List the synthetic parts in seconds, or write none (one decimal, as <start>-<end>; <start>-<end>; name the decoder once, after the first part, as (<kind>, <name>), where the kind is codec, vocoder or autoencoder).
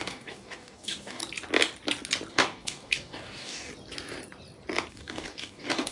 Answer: 0.0-1.2 (codec, DAC); 2.3-3.7; 4.9-5.9